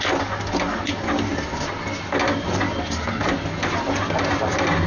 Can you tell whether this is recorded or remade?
recorded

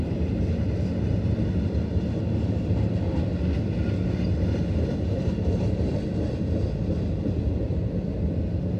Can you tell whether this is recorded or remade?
recorded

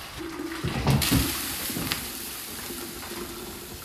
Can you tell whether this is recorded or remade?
remade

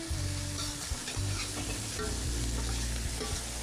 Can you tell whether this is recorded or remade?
recorded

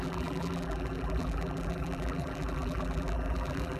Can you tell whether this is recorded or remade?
remade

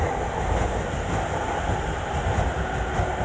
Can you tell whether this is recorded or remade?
recorded